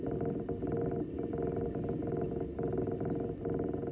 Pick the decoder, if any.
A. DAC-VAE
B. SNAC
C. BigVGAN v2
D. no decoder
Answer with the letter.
D